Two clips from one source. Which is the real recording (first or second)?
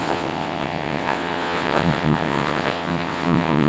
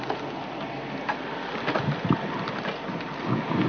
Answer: second